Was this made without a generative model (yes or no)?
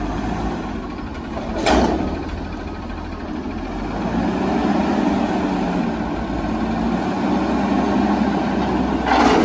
yes